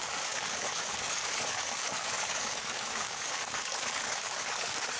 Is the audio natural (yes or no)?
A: no